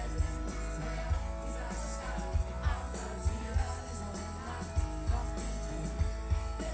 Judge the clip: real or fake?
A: real